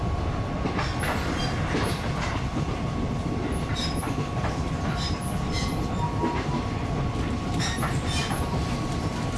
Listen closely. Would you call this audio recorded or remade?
remade